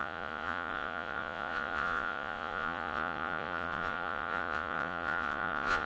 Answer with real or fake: fake